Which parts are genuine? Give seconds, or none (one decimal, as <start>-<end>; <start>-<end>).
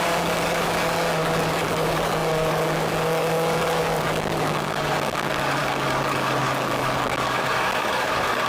none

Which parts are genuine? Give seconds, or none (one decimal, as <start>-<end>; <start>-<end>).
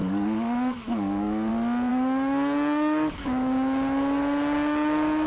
1.5-1.9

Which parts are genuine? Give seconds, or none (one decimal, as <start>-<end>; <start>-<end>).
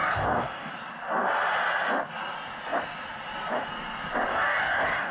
0.7-4.3